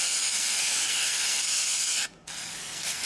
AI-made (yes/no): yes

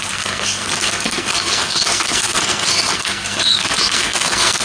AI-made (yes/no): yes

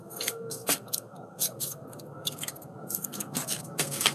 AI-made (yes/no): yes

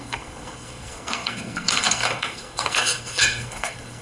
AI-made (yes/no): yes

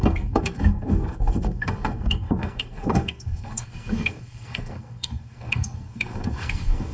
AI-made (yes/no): yes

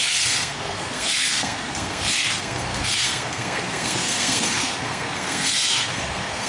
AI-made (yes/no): yes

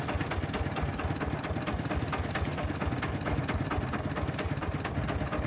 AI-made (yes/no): no